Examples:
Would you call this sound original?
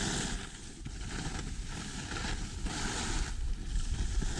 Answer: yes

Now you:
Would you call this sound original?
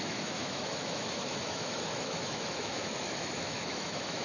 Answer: no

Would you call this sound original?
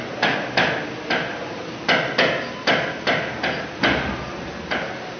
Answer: yes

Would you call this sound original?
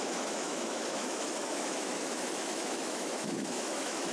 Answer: no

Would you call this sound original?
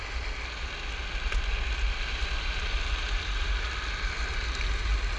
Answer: yes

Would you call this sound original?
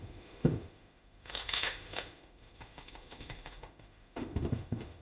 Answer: no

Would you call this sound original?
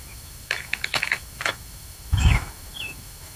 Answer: no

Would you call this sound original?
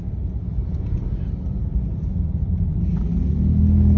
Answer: yes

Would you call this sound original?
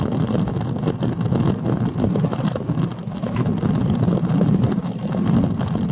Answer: yes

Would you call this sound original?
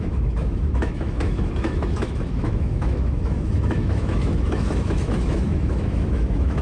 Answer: no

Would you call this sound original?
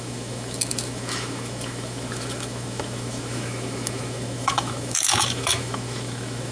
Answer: no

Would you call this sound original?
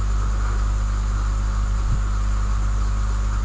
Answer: yes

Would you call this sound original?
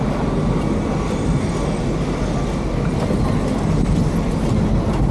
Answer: yes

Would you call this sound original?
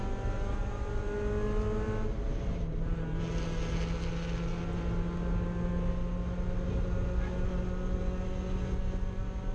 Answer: yes